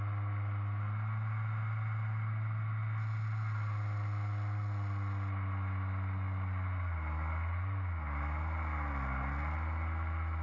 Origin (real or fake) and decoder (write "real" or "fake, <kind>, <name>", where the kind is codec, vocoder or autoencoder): real